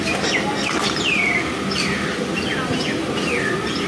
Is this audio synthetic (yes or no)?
no